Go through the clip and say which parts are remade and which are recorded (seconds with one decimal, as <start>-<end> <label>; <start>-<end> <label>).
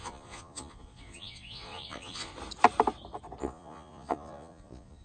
0.0-2.3 remade; 2.3-3.4 recorded; 3.4-5.0 remade